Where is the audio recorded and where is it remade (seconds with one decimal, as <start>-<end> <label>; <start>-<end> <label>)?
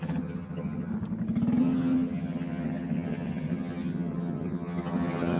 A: 0.0-0.9 remade; 0.9-1.6 recorded; 1.6-5.4 remade